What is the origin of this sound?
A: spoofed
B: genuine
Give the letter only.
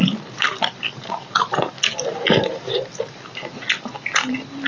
B